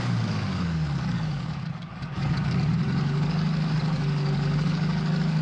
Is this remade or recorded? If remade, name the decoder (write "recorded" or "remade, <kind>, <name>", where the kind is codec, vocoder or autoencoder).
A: remade, codec, DAC